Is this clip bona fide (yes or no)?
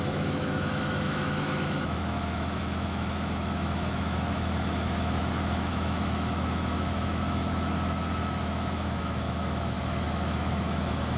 no